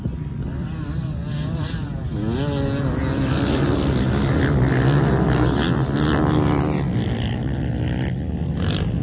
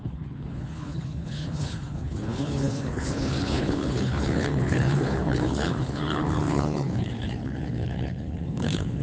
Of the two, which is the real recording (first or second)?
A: first